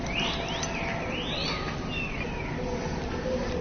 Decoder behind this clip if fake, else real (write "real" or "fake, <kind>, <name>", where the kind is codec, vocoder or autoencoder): real